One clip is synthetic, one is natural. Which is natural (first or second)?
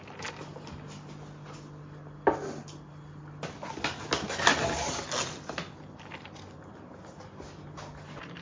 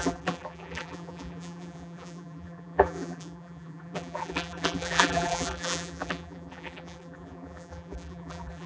first